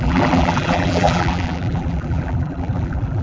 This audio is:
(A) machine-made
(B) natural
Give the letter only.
A